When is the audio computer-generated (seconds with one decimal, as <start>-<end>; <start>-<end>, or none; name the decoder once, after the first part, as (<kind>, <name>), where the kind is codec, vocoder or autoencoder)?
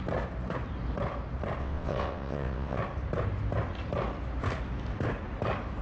1.6-2.8 (vocoder, WaveNeXt)